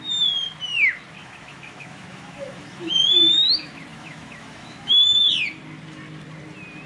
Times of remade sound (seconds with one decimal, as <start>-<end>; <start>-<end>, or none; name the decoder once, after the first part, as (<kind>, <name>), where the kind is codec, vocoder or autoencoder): 1.2-2.9 (autoencoder, DAC-VAE); 3.9-5.3